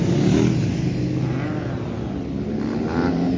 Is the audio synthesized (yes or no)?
no